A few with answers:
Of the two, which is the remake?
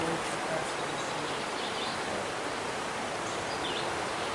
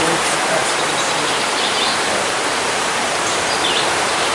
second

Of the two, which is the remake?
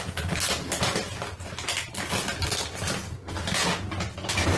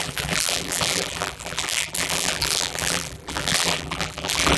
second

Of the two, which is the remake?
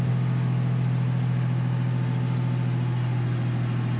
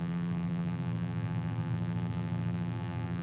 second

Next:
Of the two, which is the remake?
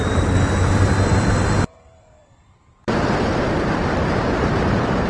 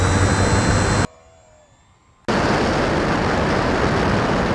first